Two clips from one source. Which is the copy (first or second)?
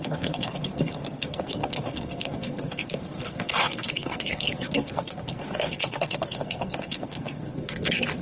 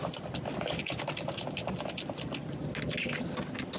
first